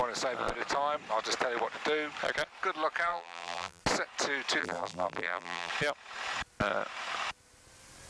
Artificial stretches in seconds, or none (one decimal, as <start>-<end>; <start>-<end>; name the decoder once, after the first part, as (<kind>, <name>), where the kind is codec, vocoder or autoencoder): 3.1-3.8 (vocoder, BigVGAN v2); 4.6-5.7